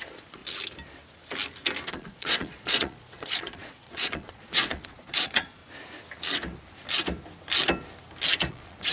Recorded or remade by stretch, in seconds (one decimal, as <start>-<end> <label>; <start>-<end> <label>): 0.0-0.4 remade; 0.4-1.9 recorded; 1.9-5.6 remade; 5.6-8.5 recorded; 8.5-8.9 remade